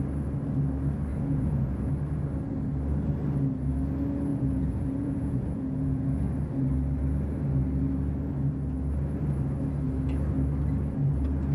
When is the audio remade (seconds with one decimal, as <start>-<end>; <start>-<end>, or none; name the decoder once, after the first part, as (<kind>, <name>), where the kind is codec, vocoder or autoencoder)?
1.1-1.9 (vocoder, Vocos); 4.3-6.3